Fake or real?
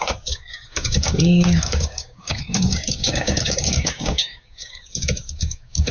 fake